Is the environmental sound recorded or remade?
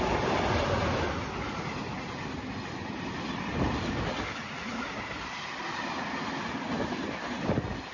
recorded